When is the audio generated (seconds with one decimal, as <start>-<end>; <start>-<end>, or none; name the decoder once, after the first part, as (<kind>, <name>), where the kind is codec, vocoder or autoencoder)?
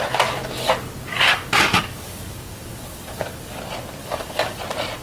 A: 1.1-3.6 (codec, DAC); 4.0-4.6